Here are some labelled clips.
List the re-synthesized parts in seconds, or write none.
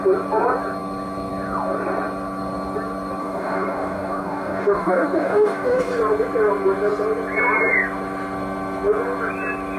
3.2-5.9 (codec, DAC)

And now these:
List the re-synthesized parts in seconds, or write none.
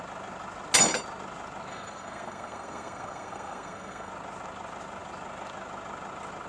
1.7-4.1 (codec, SNAC)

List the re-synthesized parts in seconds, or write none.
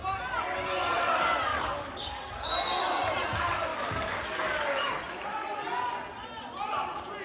1.5-2.1 (codec, DAC); 3.7-4.9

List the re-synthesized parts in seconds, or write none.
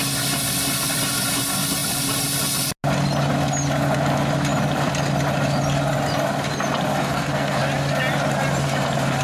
6.9-7.6 (codec, SNAC)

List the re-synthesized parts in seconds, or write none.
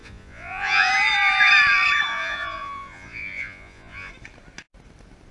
0.0-0.9 (vocoder, Vocos); 2.1-4.1